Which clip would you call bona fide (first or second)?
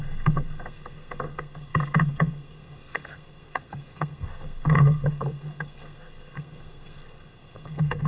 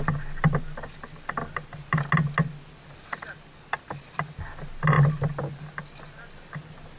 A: second